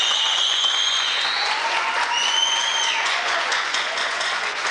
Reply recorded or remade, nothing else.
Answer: remade